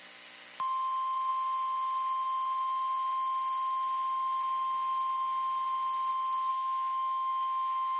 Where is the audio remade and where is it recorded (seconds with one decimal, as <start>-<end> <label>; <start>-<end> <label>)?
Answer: 0.0-6.5 recorded; 6.5-8.0 remade